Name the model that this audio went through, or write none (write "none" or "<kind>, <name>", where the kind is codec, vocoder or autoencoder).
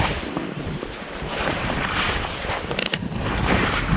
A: vocoder, BigVGAN v2